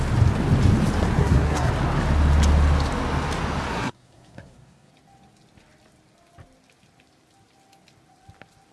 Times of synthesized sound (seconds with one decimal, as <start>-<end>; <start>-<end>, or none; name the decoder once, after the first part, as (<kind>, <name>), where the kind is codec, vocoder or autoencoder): 1.2-1.7 (codec, SNAC); 3.7-4.9